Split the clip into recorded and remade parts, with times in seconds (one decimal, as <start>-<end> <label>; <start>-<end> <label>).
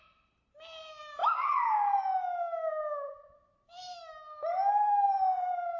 0.0-1.2 recorded; 1.2-4.7 remade; 4.7-5.8 recorded